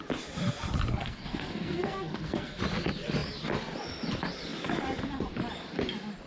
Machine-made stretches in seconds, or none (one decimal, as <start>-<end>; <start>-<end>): 0.9-2.6